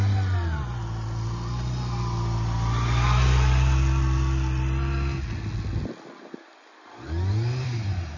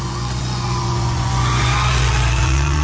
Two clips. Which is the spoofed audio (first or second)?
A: second